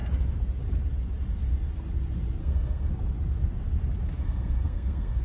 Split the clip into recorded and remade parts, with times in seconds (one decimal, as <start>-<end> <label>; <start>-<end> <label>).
0.0-2.4 recorded; 2.4-2.9 remade; 2.9-4.2 recorded; 4.2-5.2 remade